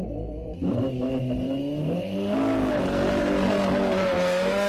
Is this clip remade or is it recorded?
remade